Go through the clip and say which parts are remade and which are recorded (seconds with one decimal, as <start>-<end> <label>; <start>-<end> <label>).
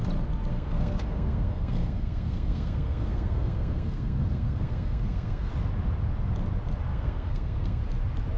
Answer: 0.0-0.5 recorded; 0.5-5.5 remade; 5.5-6.9 recorded; 6.9-7.8 remade; 7.8-8.4 recorded